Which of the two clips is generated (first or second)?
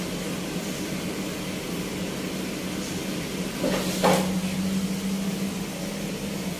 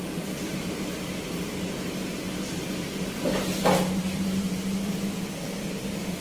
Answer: second